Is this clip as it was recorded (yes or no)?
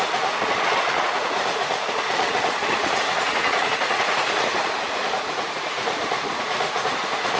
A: no